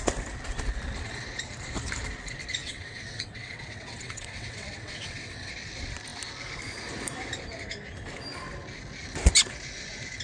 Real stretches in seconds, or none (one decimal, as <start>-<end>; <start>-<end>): 0.0-2.6; 5.5-10.2